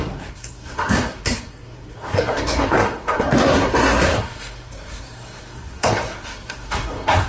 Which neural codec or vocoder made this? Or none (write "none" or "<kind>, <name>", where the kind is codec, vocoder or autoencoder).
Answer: codec, SNAC